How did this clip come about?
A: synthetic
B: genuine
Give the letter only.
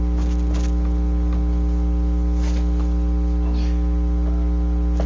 B